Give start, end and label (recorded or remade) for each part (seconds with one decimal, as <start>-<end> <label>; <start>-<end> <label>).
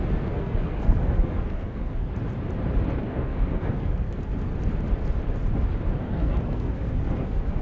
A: 0.0-2.1 remade; 2.1-3.0 recorded; 3.0-4.5 remade; 4.5-6.0 recorded; 6.0-7.6 remade